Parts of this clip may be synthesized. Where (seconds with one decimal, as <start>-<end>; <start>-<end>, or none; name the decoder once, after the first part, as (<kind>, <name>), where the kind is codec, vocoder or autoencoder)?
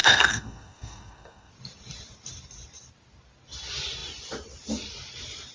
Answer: 0.0-1.5 (codec, SNAC)